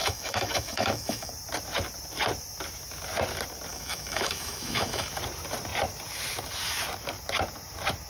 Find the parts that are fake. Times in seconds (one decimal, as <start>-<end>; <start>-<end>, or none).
0.0-1.3; 3.7-5.1